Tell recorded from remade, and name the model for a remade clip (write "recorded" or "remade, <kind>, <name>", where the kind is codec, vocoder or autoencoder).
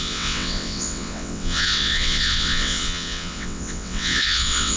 remade, vocoder, WaveNeXt